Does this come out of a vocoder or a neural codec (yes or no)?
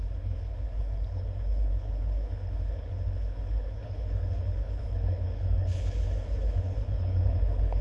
yes